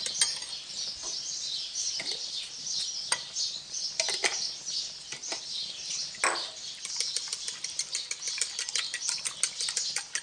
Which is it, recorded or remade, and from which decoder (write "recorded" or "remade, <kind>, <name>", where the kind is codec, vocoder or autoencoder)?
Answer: recorded